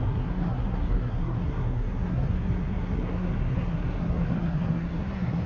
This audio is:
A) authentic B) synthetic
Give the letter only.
B